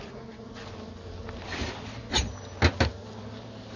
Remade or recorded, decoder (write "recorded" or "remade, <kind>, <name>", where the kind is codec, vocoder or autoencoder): recorded